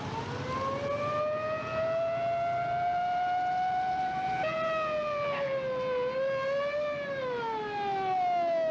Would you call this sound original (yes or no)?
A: yes